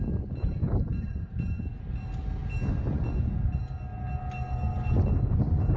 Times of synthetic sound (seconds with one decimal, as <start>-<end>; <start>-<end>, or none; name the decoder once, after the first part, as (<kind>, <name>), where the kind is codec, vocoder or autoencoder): 0.6-1.2 (vocoder, BigVGAN v2)